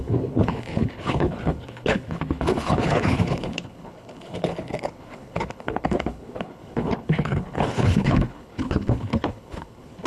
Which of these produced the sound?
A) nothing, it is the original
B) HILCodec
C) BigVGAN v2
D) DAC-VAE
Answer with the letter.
B